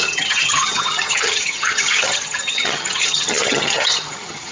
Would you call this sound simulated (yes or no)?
yes